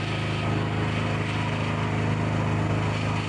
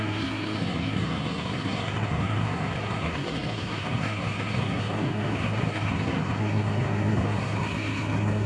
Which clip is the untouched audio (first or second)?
first